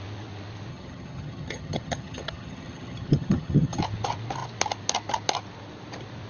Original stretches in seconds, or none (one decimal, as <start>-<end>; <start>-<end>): 0.0-0.7; 3.8-6.3